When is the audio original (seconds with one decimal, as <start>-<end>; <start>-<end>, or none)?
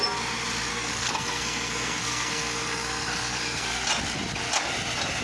0.0-0.7; 3.8-5.2